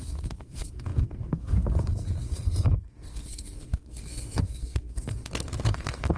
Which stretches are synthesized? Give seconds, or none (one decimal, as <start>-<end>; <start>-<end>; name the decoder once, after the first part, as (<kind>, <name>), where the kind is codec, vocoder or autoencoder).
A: 0.0-6.2 (codec, SNAC)